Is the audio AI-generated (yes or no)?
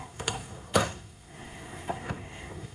yes